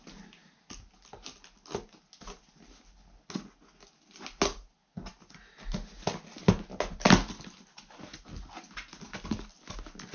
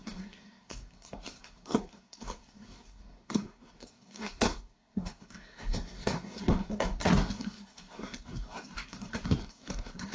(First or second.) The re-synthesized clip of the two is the second